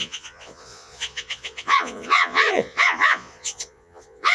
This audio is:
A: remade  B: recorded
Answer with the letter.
A